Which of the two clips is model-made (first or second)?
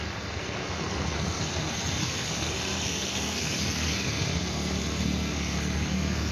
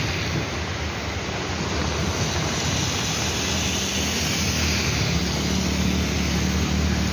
first